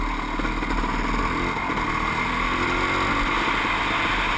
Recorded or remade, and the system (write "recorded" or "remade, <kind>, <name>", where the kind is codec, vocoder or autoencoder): recorded